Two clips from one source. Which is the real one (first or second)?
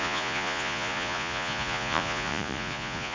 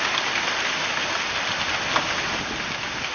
second